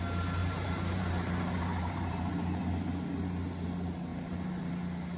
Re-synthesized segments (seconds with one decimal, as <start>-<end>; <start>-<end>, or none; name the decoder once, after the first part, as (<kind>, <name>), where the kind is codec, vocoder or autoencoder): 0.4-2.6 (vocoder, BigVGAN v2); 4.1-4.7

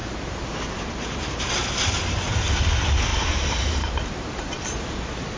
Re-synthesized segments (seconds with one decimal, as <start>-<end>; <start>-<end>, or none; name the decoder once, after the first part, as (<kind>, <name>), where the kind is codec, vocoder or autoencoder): 0.0-1.4 (vocoder, BigVGAN v2); 3.1-4.9

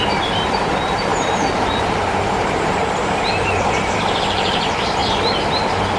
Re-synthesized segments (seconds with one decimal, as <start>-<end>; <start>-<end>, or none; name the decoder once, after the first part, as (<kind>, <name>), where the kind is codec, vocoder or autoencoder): 0.0-5.0 (vocoder, BigVGAN v2)